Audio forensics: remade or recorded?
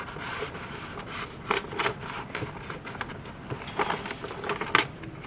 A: recorded